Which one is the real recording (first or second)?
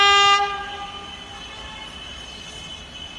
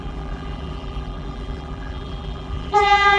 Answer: first